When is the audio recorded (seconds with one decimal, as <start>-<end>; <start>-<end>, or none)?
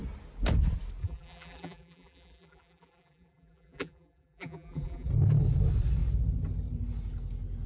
0.0-1.0; 5.1-7.7